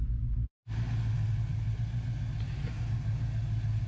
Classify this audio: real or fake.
real